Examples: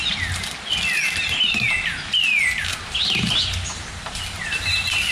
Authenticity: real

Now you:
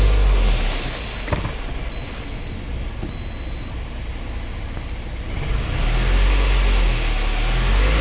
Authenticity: real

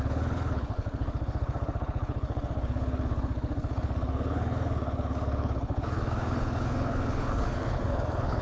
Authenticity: fake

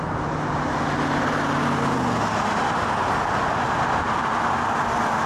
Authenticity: real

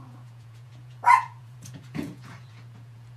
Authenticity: fake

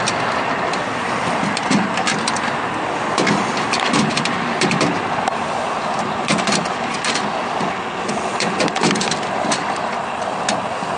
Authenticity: real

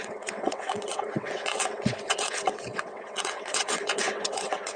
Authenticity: fake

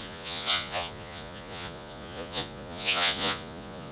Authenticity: fake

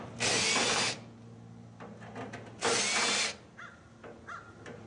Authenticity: real